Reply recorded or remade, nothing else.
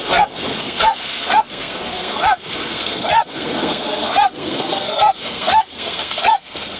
remade